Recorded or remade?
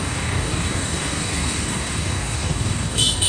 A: remade